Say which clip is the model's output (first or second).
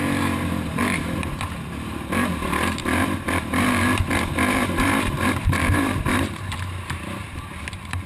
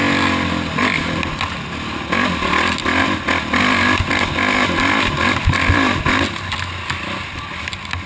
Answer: first